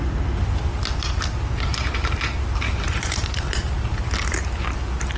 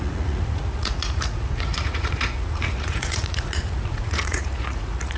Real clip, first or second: first